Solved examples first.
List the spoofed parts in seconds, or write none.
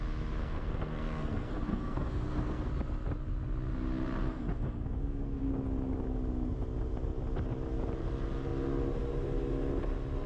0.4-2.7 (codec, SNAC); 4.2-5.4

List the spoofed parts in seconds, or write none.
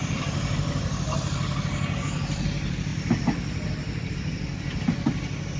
none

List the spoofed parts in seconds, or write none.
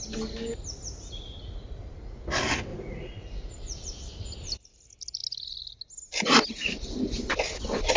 2.7-3.5 (vocoder, Vocos)